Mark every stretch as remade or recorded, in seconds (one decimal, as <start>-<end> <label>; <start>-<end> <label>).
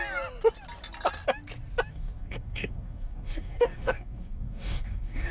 0.0-1.9 recorded; 1.9-5.3 remade